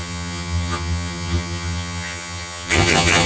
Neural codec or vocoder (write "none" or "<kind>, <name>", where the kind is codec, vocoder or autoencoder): vocoder, HiFi-GAN